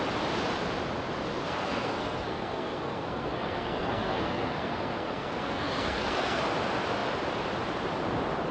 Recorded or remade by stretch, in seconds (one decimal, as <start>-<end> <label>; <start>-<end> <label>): 0.0-1.3 recorded; 1.3-6.4 remade; 6.4-8.5 recorded

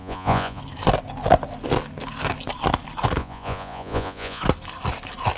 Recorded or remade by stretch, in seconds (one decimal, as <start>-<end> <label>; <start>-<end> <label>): 0.0-0.6 remade; 0.6-3.2 recorded; 3.2-4.4 remade; 4.4-5.4 recorded